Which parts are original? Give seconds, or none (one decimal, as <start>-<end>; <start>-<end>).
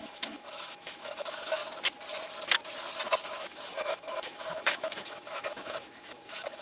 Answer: 1.6-3.4